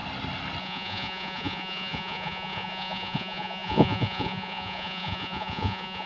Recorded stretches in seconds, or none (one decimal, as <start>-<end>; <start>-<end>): 0.0-0.6